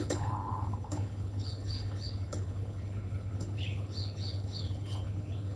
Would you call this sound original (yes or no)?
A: no